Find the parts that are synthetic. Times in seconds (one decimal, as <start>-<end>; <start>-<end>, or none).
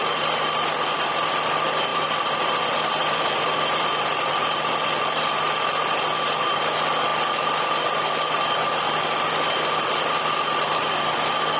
1.9-4.3